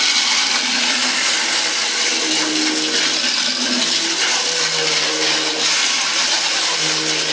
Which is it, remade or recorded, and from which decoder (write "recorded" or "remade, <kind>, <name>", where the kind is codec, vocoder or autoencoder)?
recorded